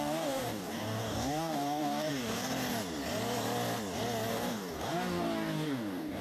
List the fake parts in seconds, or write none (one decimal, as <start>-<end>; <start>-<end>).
0.0-2.5; 4.3-6.2